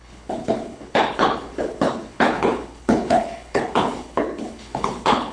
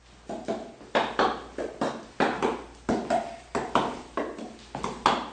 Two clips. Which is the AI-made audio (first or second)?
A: first